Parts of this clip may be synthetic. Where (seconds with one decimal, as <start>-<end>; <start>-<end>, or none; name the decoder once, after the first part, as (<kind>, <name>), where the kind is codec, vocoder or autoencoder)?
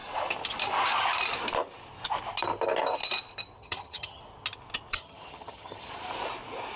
3.6-4.2 (vocoder, HiFi-GAN); 4.9-5.9